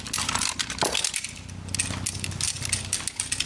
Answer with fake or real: real